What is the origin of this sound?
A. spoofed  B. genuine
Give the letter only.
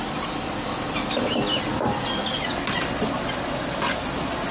B